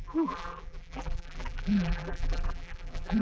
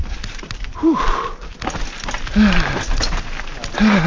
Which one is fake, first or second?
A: first